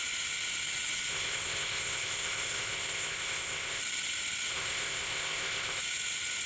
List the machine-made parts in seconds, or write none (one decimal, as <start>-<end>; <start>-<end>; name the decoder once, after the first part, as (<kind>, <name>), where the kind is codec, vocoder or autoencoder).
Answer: 1.1-3.8 (codec, ZipCodec); 4.5-5.8